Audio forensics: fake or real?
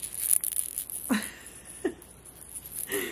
real